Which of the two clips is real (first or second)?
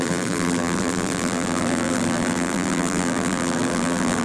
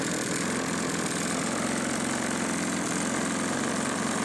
second